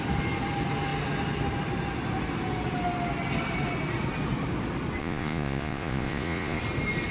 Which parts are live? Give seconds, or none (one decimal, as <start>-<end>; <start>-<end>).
0.0-5.0; 6.6-7.1